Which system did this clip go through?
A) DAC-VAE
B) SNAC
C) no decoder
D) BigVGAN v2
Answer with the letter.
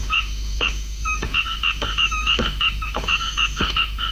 A